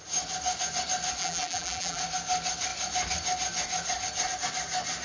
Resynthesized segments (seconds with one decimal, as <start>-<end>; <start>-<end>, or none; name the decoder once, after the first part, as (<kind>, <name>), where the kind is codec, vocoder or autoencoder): 1.2-2.0 (vocoder, BigVGAN v2)

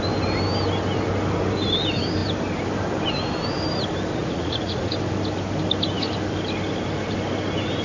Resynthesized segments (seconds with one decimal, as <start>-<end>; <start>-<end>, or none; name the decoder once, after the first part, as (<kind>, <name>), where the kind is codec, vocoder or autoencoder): 4.2-4.9 (vocoder, Vocos)

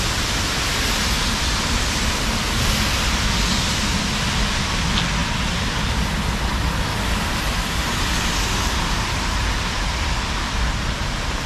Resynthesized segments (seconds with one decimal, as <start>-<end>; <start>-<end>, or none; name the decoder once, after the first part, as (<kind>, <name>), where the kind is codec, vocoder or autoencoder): none

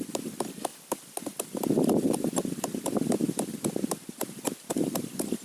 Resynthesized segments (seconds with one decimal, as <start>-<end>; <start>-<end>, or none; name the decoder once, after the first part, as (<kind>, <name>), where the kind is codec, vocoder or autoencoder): none

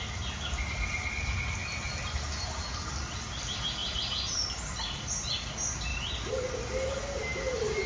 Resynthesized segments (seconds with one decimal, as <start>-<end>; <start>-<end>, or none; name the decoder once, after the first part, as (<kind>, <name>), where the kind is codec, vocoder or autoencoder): 3.8-5.1 (vocoder, BigVGAN v2); 5.9-6.7

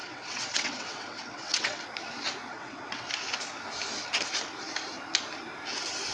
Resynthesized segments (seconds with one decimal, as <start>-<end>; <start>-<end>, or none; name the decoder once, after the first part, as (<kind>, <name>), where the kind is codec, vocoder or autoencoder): 0.0-1.8 (vocoder, WaveNeXt); 2.5-3.1